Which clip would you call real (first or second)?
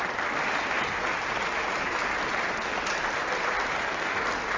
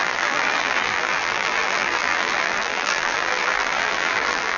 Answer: first